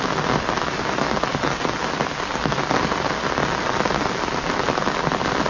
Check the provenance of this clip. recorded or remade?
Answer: recorded